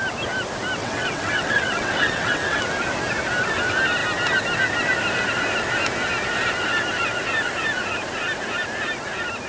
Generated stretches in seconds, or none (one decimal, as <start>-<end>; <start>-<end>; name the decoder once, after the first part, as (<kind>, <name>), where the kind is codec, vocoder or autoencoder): 0.8-2.6 (vocoder, WaveNeXt)